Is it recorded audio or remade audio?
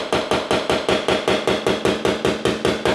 recorded